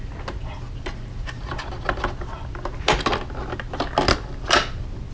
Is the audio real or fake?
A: real